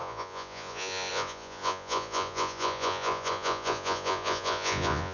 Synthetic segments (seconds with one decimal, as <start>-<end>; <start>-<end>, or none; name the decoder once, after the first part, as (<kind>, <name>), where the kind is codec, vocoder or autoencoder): 0.0-5.1 (vocoder, Vocos)